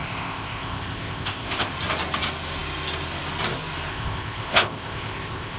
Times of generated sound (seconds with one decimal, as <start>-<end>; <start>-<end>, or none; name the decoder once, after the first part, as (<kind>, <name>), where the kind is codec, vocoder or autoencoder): 0.0-1.7 (codec, ZipCodec); 3.9-5.6